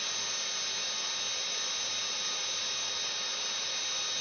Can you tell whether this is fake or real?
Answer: real